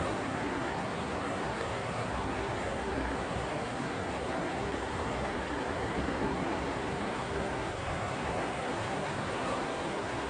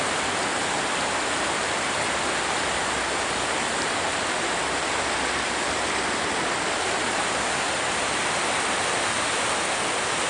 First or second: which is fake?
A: first